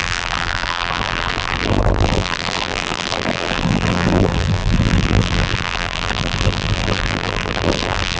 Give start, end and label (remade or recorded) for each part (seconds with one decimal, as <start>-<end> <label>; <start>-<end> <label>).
0.0-8.2 remade

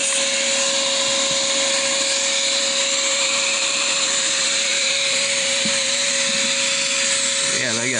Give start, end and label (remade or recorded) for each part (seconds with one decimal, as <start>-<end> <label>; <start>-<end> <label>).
0.0-3.1 recorded; 3.1-6.1 remade; 6.1-8.0 recorded

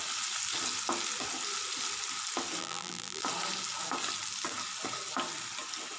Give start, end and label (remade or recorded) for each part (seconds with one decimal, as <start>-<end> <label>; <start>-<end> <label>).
0.0-2.6 recorded; 2.6-3.2 remade; 3.2-6.0 recorded

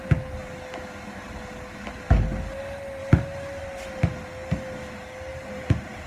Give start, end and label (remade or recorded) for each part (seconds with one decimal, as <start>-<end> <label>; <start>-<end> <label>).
0.0-5.3 recorded; 5.3-6.1 remade

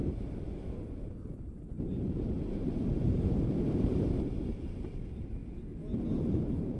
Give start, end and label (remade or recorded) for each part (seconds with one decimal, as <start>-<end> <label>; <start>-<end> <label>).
0.0-5.4 remade; 5.4-6.1 recorded; 6.1-6.8 remade

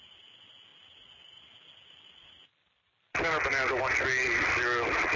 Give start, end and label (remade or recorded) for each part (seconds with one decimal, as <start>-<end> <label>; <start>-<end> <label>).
0.0-5.2 recorded

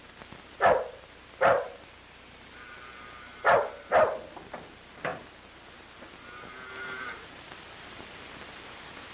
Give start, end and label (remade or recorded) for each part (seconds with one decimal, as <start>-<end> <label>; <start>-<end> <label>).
0.0-9.1 recorded